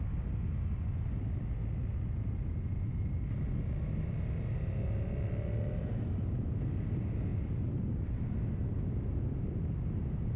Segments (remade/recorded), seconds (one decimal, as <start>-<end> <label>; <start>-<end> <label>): 0.0-10.4 recorded

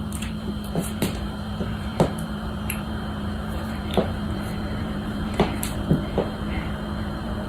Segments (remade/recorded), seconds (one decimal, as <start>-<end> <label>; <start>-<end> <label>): 0.0-7.5 remade

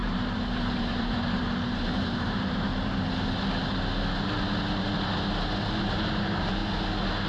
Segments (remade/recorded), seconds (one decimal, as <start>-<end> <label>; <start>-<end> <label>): 0.0-2.7 remade; 2.7-5.8 recorded; 5.8-6.6 remade; 6.6-7.3 recorded

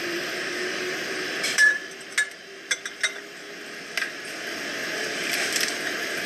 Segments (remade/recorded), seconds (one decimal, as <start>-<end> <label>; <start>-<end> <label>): 0.0-1.8 remade; 1.8-5.0 recorded; 5.0-6.3 remade

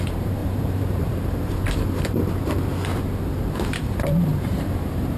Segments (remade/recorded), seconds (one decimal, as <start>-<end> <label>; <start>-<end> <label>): 0.0-2.2 remade; 2.2-3.8 recorded; 3.8-5.2 remade